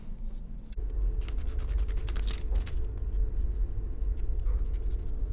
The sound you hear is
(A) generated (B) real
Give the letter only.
B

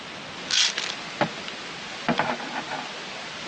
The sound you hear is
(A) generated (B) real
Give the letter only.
B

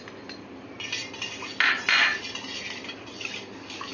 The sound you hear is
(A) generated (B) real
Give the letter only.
B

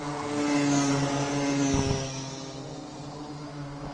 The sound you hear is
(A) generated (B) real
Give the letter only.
B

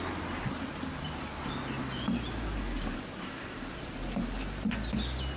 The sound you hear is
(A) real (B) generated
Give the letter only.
A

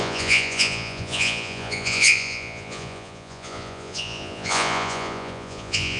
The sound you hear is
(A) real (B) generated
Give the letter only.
B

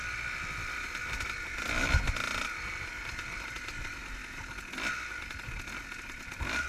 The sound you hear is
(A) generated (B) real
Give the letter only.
B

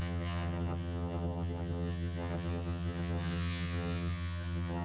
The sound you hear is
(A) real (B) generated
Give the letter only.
B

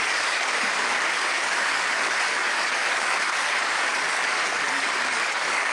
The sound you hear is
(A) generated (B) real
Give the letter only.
A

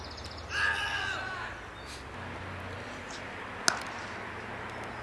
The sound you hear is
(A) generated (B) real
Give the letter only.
B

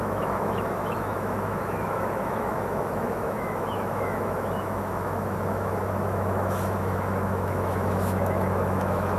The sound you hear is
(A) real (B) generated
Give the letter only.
B